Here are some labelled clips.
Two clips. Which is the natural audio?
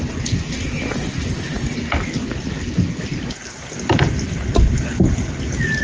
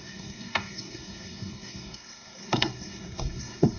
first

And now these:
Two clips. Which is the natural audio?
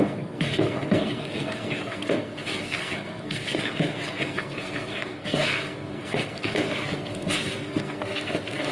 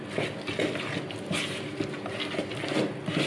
second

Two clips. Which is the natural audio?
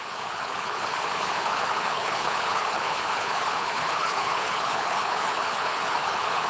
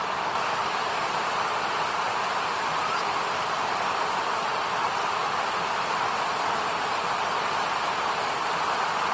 second